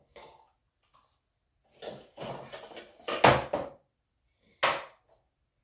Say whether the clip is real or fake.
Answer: real